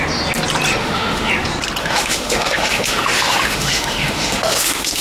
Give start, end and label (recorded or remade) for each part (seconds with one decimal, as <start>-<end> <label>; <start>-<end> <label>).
0.0-0.8 recorded; 0.8-1.3 remade; 1.3-1.8 recorded; 1.8-5.0 remade